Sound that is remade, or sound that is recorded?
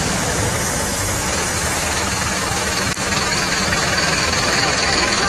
remade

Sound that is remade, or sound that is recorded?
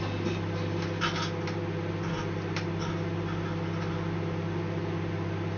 recorded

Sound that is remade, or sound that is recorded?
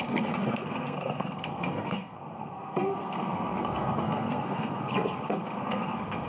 remade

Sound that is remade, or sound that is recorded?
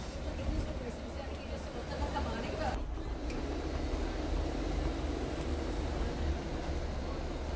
recorded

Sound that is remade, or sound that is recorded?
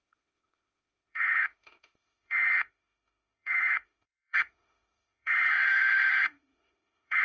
remade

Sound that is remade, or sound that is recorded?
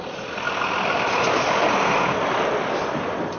recorded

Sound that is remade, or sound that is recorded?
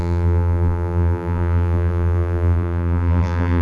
remade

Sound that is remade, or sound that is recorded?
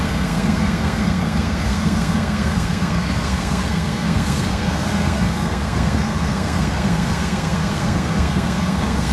remade